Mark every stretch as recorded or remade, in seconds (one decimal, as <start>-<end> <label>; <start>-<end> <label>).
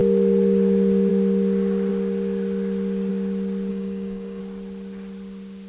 0.0-3.7 recorded; 3.7-4.4 remade; 4.4-5.7 recorded